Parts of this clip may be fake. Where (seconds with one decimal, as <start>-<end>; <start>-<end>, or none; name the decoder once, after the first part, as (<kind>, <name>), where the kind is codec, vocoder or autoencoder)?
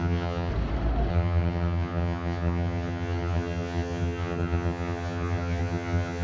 0.0-0.5 (vocoder, HiFi-GAN); 1.1-6.2